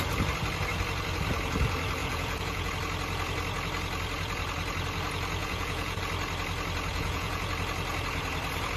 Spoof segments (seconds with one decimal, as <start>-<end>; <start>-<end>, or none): 2.0-2.7; 5.4-6.0; 6.9-7.5